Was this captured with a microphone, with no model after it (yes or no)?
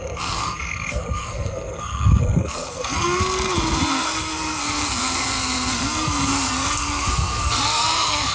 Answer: no